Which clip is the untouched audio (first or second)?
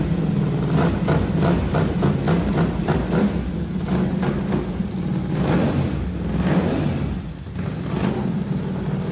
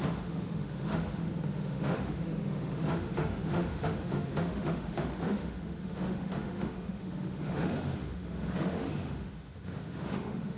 first